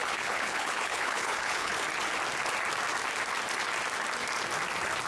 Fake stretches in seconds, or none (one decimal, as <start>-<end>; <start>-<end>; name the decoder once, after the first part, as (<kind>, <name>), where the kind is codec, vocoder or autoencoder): 0.0-1.7 (codec, HILCodec)

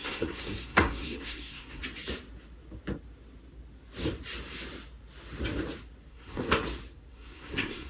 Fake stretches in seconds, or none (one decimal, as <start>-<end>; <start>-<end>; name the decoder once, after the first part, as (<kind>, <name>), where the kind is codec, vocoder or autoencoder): 0.0-1.8 (codec, SNAC); 6.1-6.5; 7.1-7.9

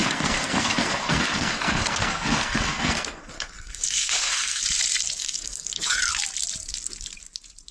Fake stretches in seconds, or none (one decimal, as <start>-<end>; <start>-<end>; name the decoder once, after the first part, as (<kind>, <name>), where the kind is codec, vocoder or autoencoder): 0.0-4.6 (codec, SNAC); 5.2-6.1

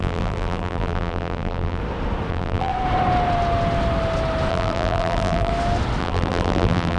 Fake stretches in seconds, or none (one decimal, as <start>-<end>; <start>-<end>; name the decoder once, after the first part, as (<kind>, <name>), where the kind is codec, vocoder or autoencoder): 0.0-1.8 (vocoder, BigVGAN v2); 2.3-2.7; 4.5-5.5; 6.0-7.0

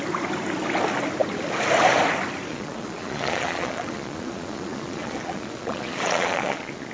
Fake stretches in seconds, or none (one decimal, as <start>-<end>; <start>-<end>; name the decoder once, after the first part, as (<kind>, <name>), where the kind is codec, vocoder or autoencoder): 2.5-6.9 (vocoder, Vocos)

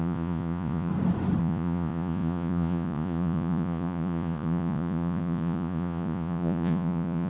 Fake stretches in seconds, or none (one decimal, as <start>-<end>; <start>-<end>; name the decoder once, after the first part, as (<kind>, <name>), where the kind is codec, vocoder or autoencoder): 0.0-0.9 (vocoder, Vocos); 1.4-7.3

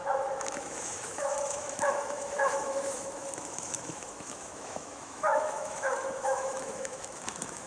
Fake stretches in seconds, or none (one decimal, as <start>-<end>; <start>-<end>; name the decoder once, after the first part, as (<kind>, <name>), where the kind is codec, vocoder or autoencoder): 0.0-7.7 (autoencoder, DAC-VAE)